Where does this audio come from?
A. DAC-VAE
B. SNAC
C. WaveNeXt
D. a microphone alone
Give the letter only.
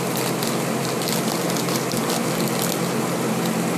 D